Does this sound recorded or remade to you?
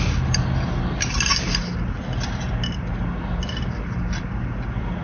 recorded